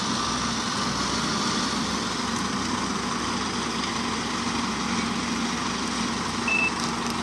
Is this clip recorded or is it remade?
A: recorded